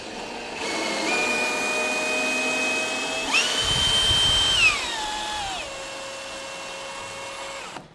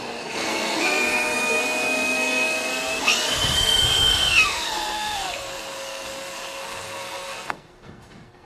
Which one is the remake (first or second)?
second